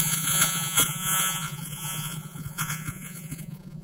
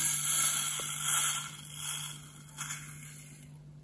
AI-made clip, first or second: first